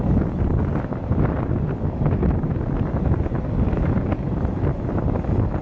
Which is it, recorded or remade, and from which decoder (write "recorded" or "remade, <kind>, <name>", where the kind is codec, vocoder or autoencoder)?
recorded